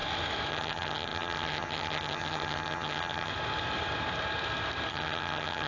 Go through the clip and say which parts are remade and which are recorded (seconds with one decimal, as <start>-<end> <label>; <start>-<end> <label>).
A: 0.0-0.5 recorded; 0.5-3.3 remade; 3.3-4.9 recorded; 4.9-5.7 remade